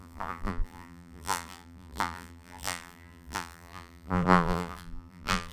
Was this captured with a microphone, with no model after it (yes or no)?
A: no